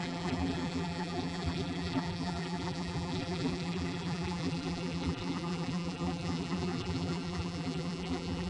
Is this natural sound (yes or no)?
no